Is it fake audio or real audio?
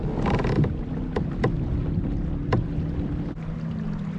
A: real